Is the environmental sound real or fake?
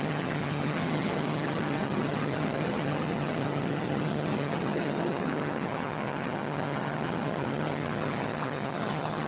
fake